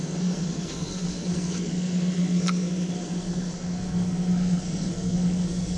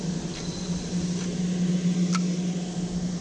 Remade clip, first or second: first